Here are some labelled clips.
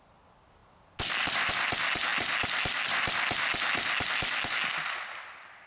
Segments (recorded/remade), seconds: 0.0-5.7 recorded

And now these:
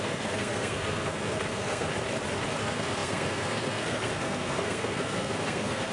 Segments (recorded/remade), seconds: 0.0-1.9 remade; 1.9-2.6 recorded; 2.6-5.9 remade